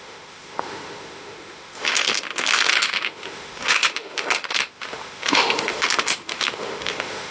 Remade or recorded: remade